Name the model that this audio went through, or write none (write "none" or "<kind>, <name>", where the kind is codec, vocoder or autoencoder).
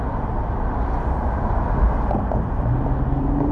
none